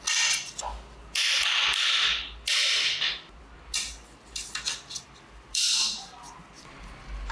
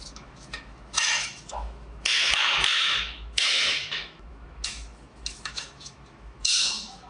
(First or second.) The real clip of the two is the first